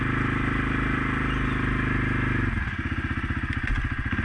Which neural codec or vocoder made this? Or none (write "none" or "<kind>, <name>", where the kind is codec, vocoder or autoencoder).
none